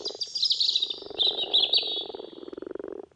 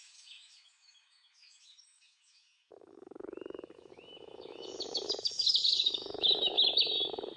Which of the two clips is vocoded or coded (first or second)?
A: second